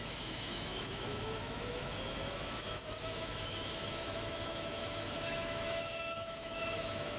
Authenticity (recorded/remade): remade